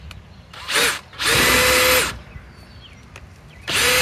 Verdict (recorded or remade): recorded